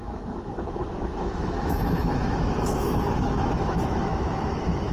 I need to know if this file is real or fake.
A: fake